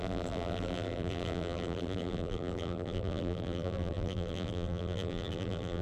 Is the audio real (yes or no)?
no